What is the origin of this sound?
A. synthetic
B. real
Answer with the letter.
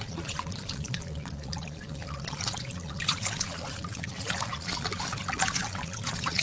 A